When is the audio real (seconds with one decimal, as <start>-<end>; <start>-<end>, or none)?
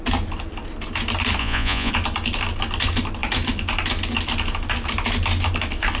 0.0-1.4; 1.9-6.0